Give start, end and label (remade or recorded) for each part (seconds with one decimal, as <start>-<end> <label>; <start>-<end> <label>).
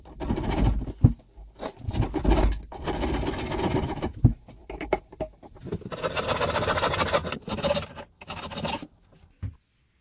0.0-10.0 recorded